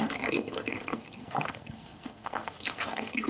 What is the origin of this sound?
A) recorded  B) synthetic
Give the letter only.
B